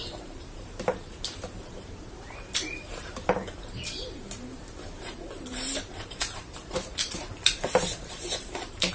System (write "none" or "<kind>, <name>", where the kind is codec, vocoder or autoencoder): vocoder, BigVGAN v2